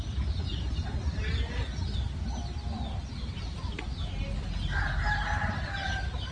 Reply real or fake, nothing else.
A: real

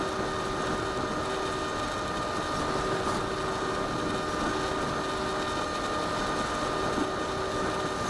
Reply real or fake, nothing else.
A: real